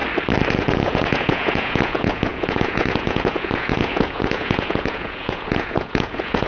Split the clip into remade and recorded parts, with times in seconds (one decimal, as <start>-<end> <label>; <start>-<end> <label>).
0.0-0.5 recorded; 0.5-6.5 remade

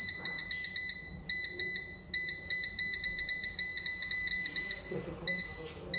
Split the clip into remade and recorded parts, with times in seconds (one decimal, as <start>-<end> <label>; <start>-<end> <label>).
0.0-6.0 recorded

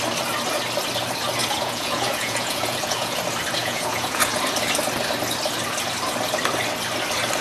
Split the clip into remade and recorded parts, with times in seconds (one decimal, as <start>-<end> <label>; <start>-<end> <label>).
0.0-1.4 recorded; 1.4-3.2 remade; 3.2-3.6 recorded; 3.6-4.4 remade; 4.4-7.4 recorded

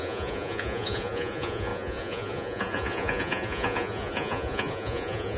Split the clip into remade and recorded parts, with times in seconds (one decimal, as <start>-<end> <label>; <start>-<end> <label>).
0.0-5.4 remade

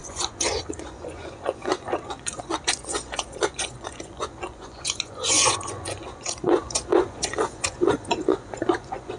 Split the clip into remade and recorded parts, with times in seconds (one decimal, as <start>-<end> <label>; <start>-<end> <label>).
0.0-9.2 remade